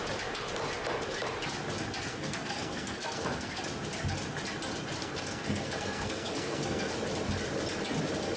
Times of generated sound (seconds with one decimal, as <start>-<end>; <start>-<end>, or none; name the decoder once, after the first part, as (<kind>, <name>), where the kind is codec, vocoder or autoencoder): 2.1-3.6 (codec, SNAC); 5.0-6.9